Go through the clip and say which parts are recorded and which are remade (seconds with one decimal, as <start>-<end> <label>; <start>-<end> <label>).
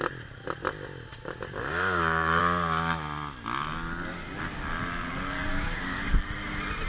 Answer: 0.0-1.1 recorded; 1.1-2.4 remade; 2.4-5.5 recorded; 5.5-6.1 remade; 6.1-6.9 recorded